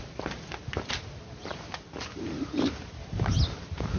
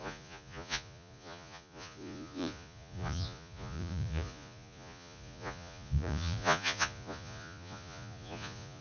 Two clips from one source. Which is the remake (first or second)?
second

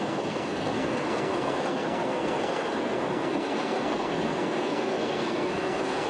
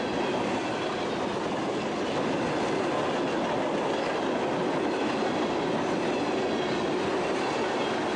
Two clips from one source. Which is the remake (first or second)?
first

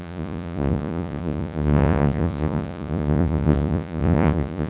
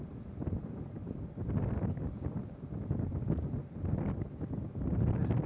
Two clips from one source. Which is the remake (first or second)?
first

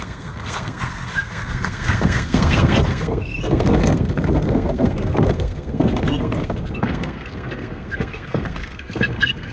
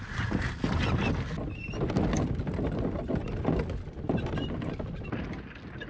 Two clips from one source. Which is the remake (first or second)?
first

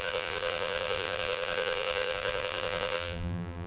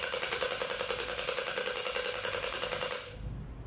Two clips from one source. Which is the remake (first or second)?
first